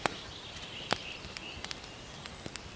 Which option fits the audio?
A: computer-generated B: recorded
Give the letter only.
B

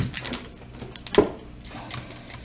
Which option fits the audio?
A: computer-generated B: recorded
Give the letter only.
B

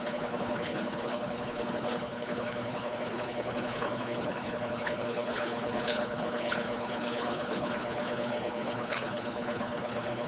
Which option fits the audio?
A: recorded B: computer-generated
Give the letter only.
B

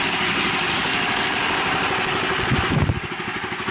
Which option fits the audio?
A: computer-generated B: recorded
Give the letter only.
B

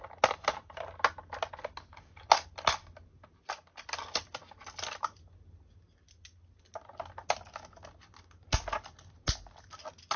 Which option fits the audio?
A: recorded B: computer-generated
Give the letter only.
A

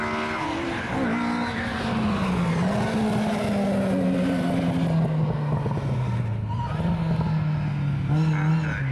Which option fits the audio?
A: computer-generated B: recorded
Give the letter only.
B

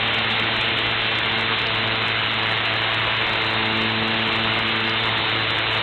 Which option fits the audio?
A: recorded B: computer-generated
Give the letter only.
A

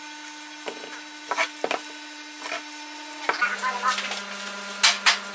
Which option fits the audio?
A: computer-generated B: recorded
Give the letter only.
B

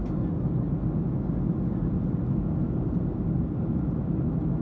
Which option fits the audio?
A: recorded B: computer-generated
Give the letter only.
A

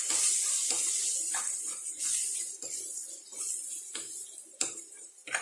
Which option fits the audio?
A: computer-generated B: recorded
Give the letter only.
B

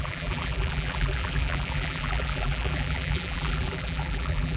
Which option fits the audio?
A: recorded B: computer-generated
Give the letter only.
B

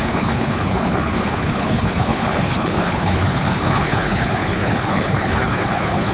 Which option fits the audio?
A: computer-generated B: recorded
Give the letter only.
A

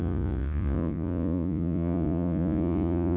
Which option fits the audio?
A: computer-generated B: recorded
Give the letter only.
A